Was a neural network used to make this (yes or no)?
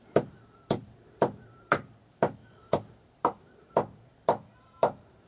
yes